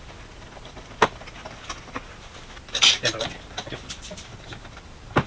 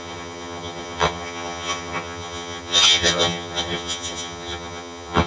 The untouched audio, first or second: first